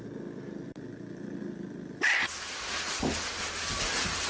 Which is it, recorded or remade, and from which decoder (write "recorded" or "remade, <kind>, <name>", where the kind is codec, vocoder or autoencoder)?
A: recorded